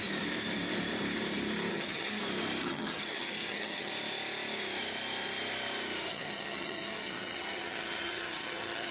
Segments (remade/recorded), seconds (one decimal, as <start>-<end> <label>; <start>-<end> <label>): 0.0-1.7 recorded; 1.7-2.2 remade; 2.2-2.6 recorded; 2.6-3.9 remade; 3.9-6.1 recorded; 6.1-8.9 remade